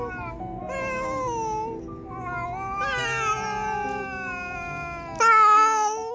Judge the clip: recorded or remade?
recorded